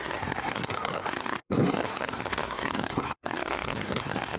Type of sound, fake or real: fake